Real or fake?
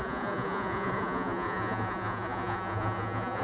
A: fake